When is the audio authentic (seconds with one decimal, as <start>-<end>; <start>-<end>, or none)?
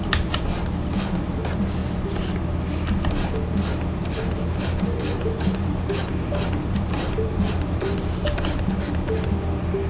0.0-4.0; 8.8-9.9